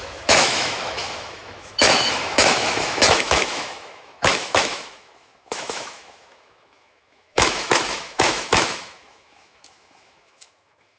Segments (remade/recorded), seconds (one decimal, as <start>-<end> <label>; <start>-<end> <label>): 0.0-11.0 remade